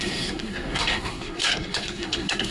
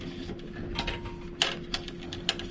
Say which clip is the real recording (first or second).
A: second